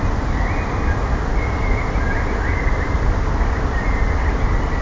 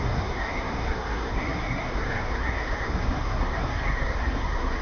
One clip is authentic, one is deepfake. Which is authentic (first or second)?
first